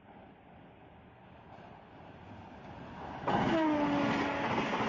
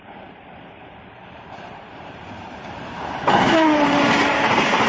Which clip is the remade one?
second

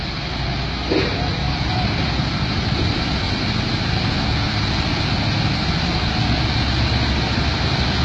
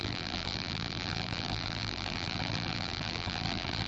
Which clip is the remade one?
second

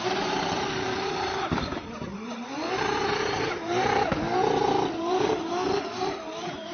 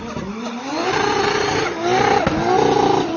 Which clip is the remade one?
first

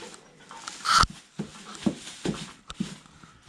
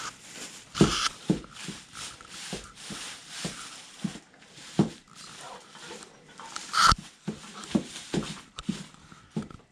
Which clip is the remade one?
second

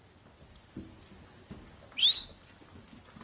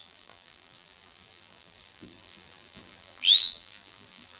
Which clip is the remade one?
second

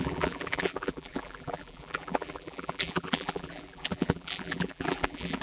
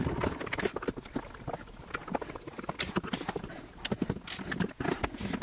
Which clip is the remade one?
first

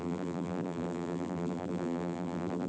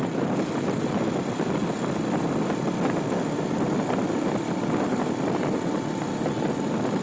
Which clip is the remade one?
first